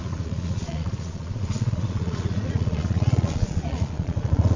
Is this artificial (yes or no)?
yes